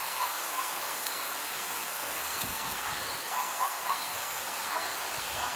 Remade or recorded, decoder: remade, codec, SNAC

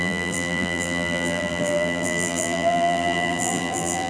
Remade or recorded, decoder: remade, vocoder, BigVGAN v2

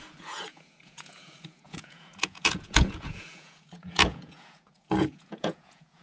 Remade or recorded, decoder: remade, vocoder, Vocos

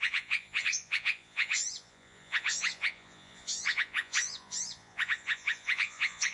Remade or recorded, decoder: remade, vocoder, Vocos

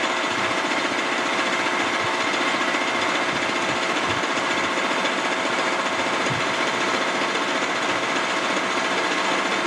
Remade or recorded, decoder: recorded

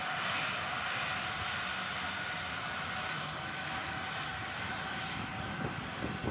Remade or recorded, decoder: recorded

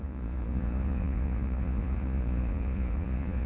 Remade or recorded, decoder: remade, vocoder, Vocos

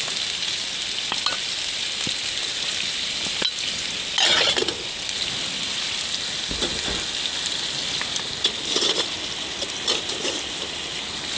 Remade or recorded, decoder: recorded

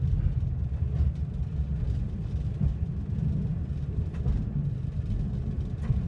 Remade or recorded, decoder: recorded